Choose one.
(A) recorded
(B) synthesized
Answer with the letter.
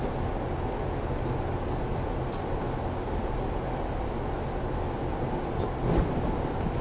A